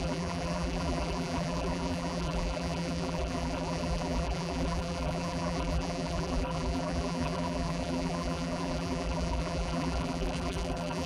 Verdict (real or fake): fake